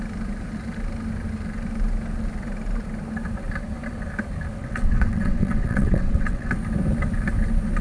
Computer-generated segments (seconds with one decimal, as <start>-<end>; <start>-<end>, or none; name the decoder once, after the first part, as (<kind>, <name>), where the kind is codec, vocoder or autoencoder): 4.6-6.5 (vocoder, WaveNeXt)